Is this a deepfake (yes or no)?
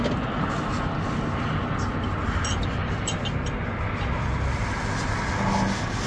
no